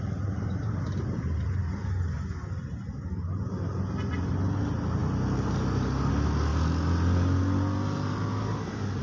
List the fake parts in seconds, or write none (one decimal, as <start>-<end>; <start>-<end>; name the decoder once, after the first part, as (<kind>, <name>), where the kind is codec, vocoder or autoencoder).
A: none